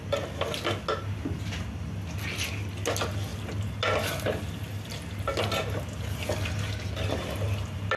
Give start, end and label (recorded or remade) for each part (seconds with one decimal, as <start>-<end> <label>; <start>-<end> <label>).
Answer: 0.0-8.0 recorded